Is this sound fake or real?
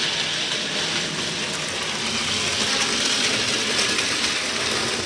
real